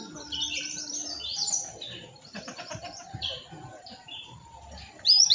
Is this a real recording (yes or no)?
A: no